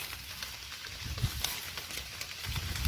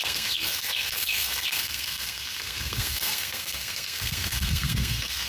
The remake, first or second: second